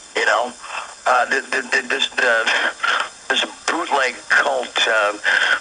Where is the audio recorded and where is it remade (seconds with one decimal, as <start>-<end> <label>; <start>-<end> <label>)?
0.0-2.2 remade; 2.2-5.6 recorded